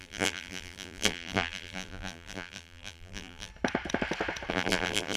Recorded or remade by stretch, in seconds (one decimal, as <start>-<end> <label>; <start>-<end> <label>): 0.0-3.5 remade; 3.5-4.5 recorded; 4.5-5.2 remade